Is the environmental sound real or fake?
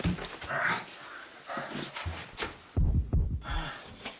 real